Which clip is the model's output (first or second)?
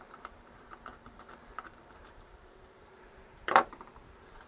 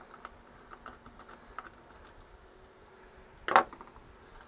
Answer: first